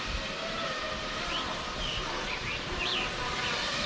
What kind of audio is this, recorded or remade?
remade